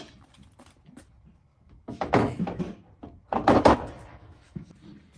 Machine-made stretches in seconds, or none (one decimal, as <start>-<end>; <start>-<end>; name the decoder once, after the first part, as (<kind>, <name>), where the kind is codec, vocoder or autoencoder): 1.5-2.6 (autoencoder, DAC-VAE); 4.1-4.7